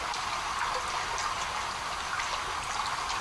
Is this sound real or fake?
real